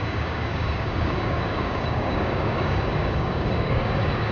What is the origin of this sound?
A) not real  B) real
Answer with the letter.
A